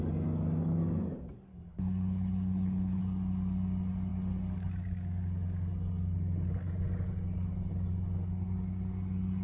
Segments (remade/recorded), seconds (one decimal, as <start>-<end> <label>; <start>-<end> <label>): 0.0-1.5 recorded; 1.5-3.0 remade; 3.0-9.4 recorded